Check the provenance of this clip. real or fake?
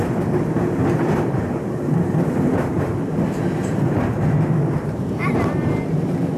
fake